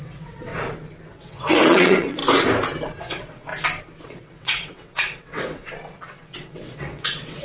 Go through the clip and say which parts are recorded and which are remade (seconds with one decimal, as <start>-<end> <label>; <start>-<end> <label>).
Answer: 0.0-0.5 remade; 0.5-1.1 recorded; 1.1-2.2 remade; 2.2-3.0 recorded; 3.0-3.5 remade; 3.5-4.0 recorded; 4.0-7.4 remade

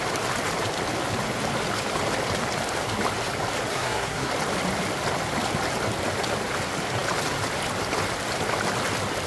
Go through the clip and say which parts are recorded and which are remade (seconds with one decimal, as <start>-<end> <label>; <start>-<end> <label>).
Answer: 0.0-3.7 recorded; 3.7-4.3 remade; 4.3-9.3 recorded

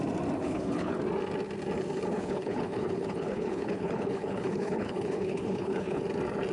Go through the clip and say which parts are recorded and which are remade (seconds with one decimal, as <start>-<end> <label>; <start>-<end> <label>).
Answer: 0.0-0.4 recorded; 0.4-1.0 remade; 1.0-2.1 recorded; 2.1-6.0 remade; 6.0-6.5 recorded

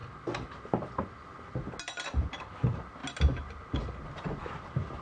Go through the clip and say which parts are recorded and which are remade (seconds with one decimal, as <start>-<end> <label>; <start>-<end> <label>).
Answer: 0.0-5.0 recorded